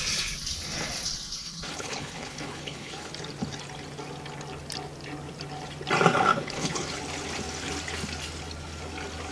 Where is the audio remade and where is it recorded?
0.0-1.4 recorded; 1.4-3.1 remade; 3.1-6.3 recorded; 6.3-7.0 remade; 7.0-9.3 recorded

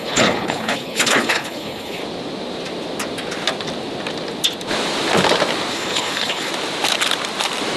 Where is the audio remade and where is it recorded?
0.0-2.0 remade; 2.0-5.7 recorded; 5.7-6.5 remade; 6.5-7.8 recorded

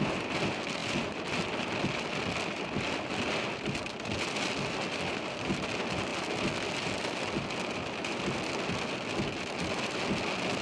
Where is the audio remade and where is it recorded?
0.0-10.6 recorded

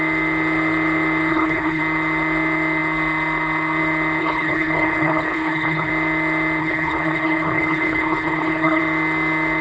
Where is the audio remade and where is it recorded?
0.0-1.3 recorded; 1.3-1.8 remade; 1.8-4.2 recorded; 4.2-5.9 remade; 5.9-6.6 recorded; 6.6-8.8 remade; 8.8-9.6 recorded